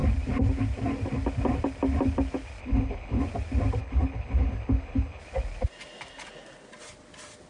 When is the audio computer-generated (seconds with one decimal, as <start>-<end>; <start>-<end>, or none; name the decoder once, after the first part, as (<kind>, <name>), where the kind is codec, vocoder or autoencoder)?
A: 2.6-3.2 (codec, HILCodec); 3.8-5.2